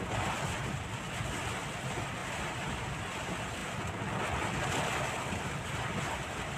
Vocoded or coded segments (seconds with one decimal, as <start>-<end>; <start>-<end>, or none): 2.2-2.8